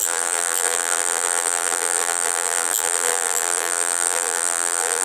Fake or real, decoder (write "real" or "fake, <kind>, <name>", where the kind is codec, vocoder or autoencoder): fake, vocoder, BigVGAN v2